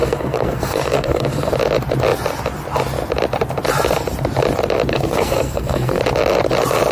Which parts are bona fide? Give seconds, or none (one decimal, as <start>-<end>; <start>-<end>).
1.5-4.9; 6.0-6.9